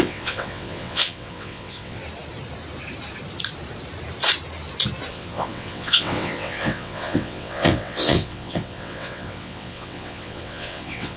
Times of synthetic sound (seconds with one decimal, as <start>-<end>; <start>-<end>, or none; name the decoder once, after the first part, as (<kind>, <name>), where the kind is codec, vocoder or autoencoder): 0.0-2.0 (vocoder, WaveNeXt); 5.1-11.2

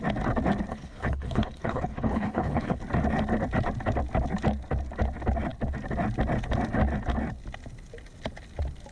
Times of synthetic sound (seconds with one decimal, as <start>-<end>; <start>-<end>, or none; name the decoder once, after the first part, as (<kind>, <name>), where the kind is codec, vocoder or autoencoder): 0.7-2.8 (codec, HILCodec)

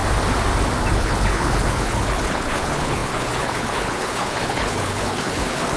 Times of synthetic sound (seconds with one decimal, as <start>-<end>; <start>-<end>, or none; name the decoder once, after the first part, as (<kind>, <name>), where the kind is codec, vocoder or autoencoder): 0.9-5.8 (codec, HILCodec)

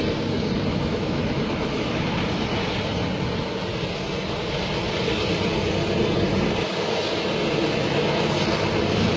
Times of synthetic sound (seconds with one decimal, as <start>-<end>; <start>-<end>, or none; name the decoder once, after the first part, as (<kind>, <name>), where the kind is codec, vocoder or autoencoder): 0.7-2.0 (autoencoder, DAC-VAE)

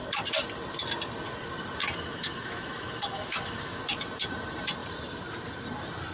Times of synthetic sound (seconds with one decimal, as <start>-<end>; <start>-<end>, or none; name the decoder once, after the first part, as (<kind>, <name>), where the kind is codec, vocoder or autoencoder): 1.8-3.8 (autoencoder, DAC-VAE)